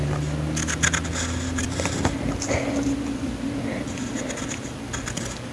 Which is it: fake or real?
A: fake